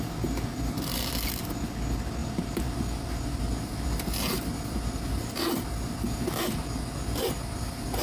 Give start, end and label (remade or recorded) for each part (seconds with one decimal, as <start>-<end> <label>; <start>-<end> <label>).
0.0-2.2 recorded; 2.2-5.5 remade; 5.5-8.0 recorded